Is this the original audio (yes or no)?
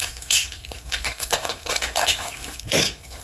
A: no